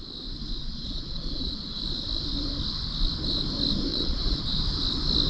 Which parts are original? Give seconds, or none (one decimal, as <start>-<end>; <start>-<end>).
0.0-0.6; 1.8-3.9; 4.6-5.3